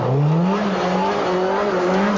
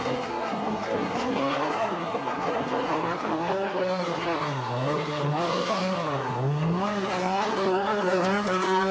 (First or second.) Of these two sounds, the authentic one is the first